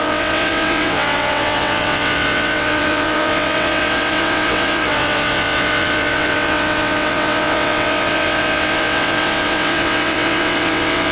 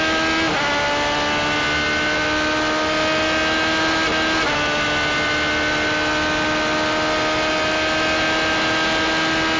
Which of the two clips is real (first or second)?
second